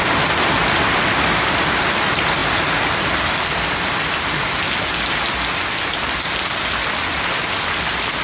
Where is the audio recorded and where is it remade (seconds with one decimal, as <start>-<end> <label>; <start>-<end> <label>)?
0.0-8.2 recorded